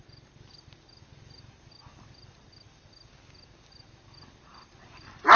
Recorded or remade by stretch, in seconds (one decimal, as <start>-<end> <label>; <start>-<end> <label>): 0.0-5.4 recorded